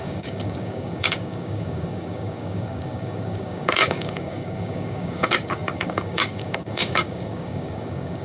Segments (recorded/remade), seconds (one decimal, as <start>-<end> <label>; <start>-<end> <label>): 0.0-8.2 remade